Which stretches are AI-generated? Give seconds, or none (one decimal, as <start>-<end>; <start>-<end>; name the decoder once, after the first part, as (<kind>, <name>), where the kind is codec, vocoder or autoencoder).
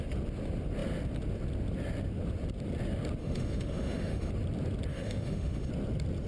3.2-4.3 (autoencoder, DAC-VAE); 4.9-5.7